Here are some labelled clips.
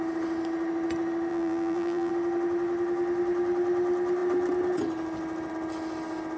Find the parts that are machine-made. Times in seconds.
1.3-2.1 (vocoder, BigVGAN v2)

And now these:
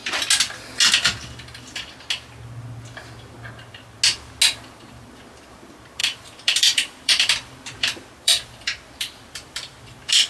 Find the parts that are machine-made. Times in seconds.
4.9-10.3 (vocoder, BigVGAN v2)